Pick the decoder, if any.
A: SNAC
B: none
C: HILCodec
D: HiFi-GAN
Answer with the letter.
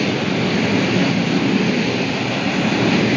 B